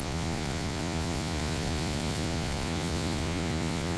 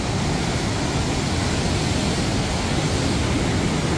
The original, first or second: second